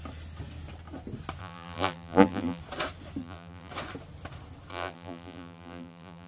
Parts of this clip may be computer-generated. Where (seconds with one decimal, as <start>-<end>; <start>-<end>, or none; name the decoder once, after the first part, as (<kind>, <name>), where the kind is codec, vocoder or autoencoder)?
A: 1.4-2.6 (vocoder, BigVGAN v2); 3.2-3.7; 4.7-6.3